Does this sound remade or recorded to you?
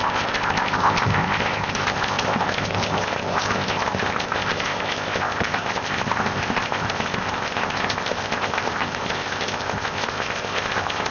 remade